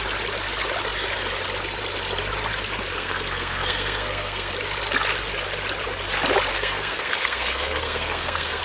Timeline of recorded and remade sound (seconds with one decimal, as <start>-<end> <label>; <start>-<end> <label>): 0.0-3.0 recorded; 3.0-4.5 remade; 4.5-6.5 recorded; 6.5-8.6 remade